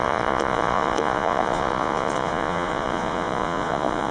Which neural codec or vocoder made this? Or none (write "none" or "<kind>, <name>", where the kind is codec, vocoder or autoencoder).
vocoder, Vocos